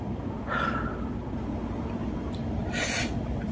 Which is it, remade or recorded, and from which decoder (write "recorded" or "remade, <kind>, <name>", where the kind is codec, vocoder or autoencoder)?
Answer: recorded